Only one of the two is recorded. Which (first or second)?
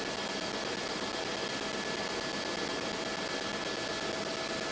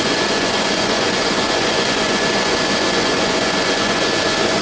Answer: first